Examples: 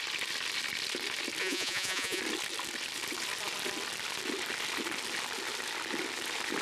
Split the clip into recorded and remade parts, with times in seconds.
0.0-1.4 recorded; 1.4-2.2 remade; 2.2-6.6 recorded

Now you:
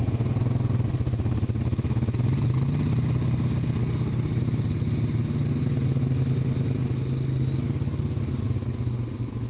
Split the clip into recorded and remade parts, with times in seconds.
0.0-9.5 recorded